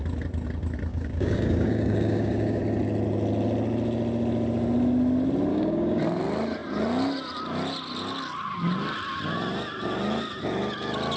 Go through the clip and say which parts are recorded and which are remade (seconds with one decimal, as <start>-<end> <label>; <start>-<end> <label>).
0.0-0.9 recorded; 0.9-2.6 remade; 2.6-5.5 recorded; 5.5-6.0 remade; 6.0-11.2 recorded